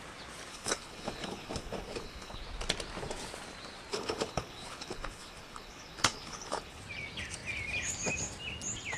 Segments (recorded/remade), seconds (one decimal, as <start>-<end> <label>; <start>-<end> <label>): 0.0-0.5 recorded; 0.5-2.4 remade; 2.4-3.9 recorded; 3.9-6.8 remade; 6.8-9.0 recorded